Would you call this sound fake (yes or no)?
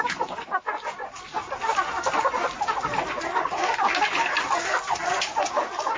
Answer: no